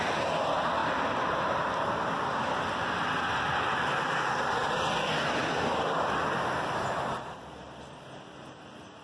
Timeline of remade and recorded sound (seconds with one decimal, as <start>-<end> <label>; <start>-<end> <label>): 0.0-9.0 recorded